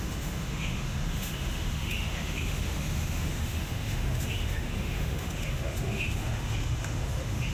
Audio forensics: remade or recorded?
remade